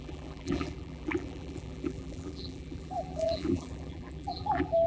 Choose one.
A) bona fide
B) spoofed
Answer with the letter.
B